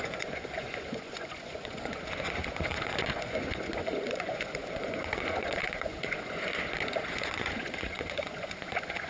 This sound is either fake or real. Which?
fake